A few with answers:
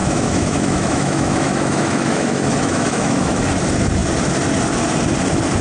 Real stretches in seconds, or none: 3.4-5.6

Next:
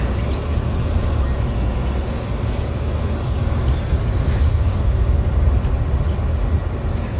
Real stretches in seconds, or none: 0.0-7.2

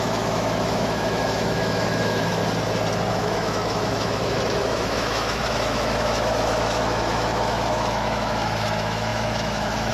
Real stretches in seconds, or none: 2.4-3.1